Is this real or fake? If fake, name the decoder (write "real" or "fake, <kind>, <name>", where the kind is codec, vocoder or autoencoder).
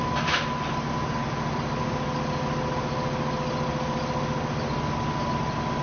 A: real